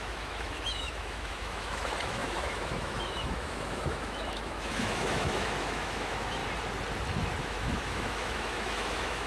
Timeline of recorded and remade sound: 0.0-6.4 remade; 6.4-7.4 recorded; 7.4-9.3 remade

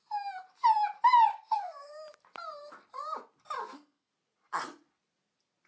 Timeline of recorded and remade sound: 0.0-1.3 recorded; 1.3-1.9 remade; 1.9-3.6 recorded; 3.6-4.1 remade; 4.1-5.7 recorded

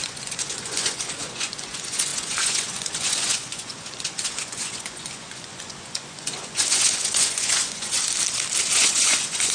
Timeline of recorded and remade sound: 0.0-8.0 remade; 8.0-8.6 recorded; 8.6-9.5 remade

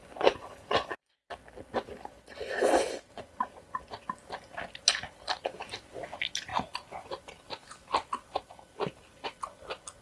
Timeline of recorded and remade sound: 0.0-1.1 remade; 1.1-10.0 recorded

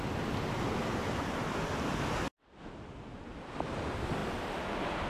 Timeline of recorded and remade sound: 0.0-5.1 recorded

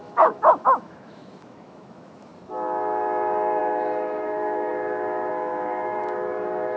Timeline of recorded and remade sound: 0.0-2.3 remade; 2.3-3.6 recorded; 3.6-6.8 remade